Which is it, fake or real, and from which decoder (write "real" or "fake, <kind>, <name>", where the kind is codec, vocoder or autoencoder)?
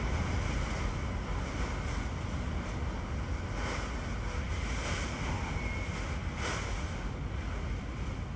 real